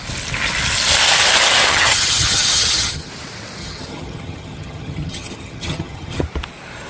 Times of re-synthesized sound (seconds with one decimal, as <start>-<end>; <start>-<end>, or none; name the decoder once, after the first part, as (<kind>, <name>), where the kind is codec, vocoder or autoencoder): 1.7-3.1 (vocoder, HiFi-GAN); 3.6-6.2